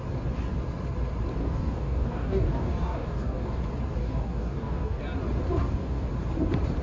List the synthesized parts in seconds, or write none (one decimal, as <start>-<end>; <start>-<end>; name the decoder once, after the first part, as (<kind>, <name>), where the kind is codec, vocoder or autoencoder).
1.4-3.6 (codec, DAC); 4.0-5.0; 5.6-6.1